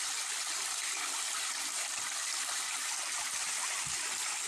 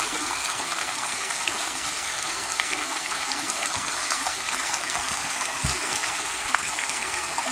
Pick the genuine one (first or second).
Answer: first